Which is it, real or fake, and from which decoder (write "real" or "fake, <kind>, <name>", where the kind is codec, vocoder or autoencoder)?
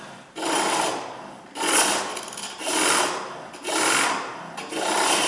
real